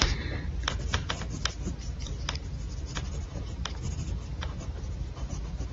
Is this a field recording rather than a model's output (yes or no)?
yes